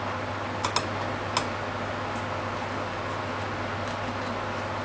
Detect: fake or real real